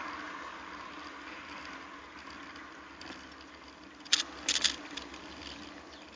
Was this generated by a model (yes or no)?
no